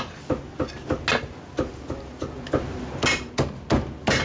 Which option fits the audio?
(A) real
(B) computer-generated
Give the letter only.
A